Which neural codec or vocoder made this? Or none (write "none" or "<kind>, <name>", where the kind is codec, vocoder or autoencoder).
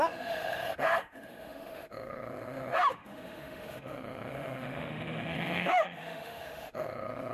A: autoencoder, DAC-VAE